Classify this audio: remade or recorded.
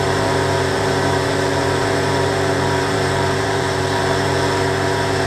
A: remade